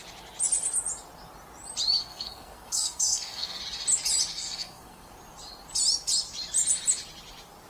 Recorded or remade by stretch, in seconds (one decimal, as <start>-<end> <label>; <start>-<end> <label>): 0.0-2.0 recorded; 2.0-3.6 remade; 3.6-4.3 recorded; 4.3-5.1 remade; 5.1-7.7 recorded